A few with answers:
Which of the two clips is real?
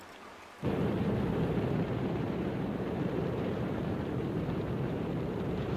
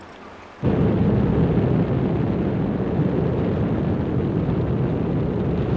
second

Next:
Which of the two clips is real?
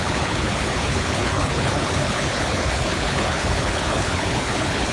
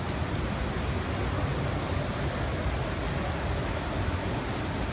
second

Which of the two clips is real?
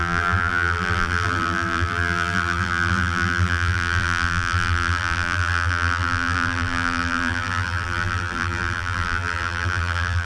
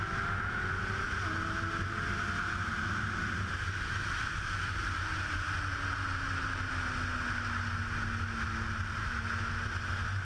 second